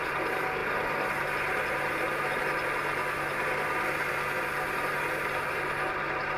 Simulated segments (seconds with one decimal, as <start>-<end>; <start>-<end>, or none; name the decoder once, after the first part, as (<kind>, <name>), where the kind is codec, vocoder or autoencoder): none